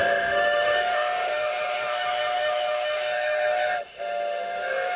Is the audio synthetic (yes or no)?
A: yes